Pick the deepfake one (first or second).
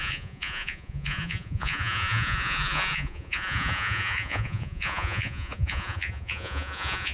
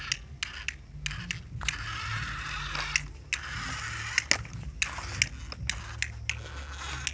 first